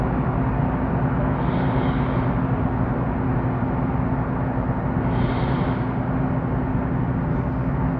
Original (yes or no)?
yes